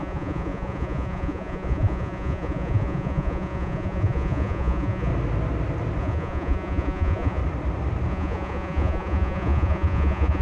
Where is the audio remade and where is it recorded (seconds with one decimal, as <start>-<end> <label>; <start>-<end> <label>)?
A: 0.0-5.1 remade; 5.1-6.0 recorded; 6.0-7.4 remade; 7.4-8.1 recorded; 8.1-10.4 remade